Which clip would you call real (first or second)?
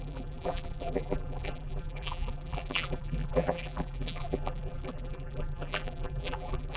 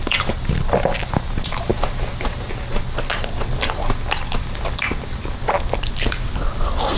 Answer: second